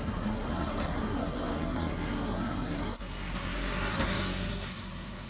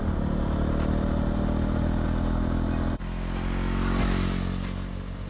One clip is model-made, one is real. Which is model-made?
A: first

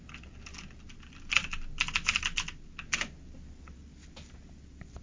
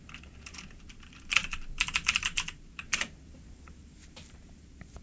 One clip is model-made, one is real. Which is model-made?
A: second